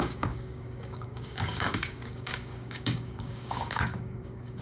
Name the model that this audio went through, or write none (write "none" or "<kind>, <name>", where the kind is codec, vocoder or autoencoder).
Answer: codec, DAC